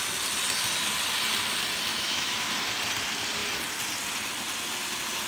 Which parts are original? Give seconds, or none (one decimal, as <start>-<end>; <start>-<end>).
0.0-1.9; 2.5-5.3